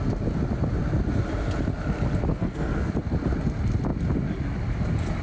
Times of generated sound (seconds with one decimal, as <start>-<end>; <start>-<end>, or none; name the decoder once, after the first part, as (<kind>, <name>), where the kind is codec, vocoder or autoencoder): 2.3-2.9 (codec, SNAC)

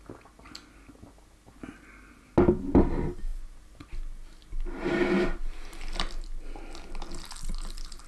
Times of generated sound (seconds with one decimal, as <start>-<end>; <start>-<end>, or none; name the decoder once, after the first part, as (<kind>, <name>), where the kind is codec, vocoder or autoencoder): none